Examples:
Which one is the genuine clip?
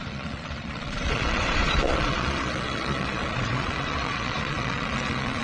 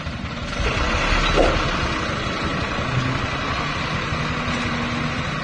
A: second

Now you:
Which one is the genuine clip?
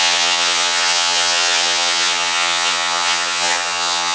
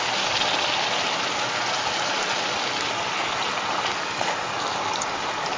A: second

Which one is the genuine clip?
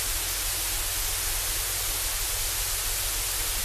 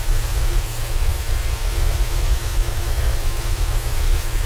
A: first